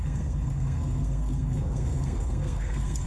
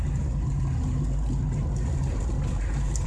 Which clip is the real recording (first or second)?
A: second